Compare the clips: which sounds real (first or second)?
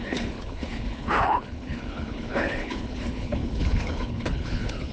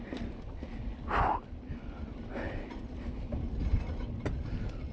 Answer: second